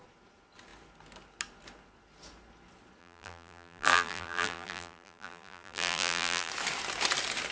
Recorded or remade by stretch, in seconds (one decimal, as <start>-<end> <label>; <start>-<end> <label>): 0.0-3.0 recorded; 3.0-6.5 remade; 6.5-7.5 recorded